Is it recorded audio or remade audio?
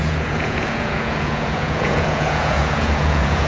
remade